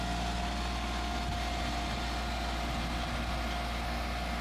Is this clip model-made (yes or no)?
no